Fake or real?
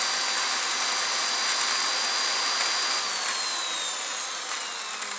real